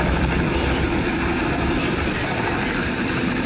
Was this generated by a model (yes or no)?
yes